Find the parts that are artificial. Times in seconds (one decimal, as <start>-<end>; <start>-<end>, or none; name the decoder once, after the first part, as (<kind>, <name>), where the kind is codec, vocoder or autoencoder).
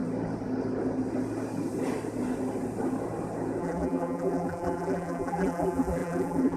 3.6-6.6 (vocoder, BigVGAN v2)